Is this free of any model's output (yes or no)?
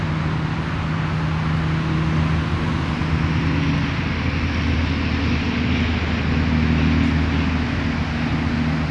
yes